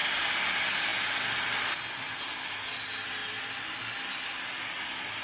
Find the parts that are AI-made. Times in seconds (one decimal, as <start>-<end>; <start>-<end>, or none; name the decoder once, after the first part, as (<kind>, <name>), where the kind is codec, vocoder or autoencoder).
none